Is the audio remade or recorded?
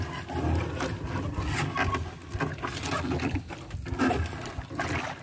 recorded